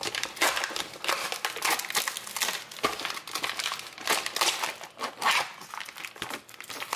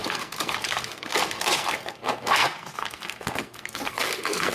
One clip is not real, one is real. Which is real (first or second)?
first